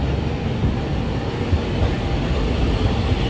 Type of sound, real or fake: real